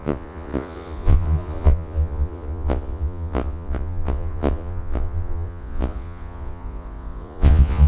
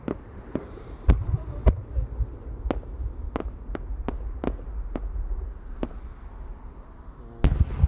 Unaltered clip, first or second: second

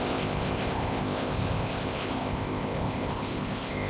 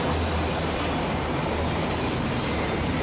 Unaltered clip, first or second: second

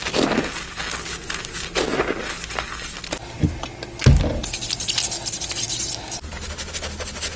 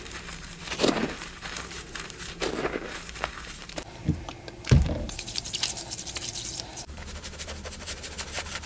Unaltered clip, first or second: first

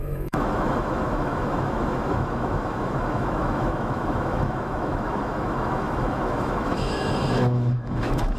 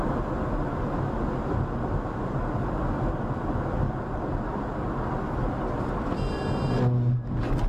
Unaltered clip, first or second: second